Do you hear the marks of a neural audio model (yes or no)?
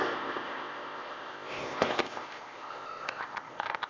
yes